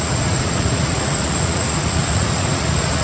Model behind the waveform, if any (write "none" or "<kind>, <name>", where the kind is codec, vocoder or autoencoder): vocoder, Vocos